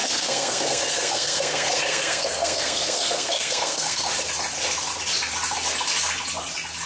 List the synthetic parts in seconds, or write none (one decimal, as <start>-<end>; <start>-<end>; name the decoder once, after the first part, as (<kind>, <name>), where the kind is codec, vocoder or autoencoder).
0.0-4.1 (codec, SNAC)